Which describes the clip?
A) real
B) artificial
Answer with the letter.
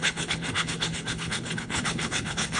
B